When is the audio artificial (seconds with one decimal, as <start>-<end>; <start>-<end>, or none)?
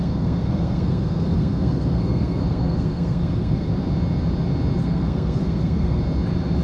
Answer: 0.0-3.7; 4.8-6.0